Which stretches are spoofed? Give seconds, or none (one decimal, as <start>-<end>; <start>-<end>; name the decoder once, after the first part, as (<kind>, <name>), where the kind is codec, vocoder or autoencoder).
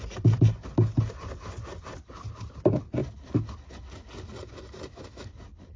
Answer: none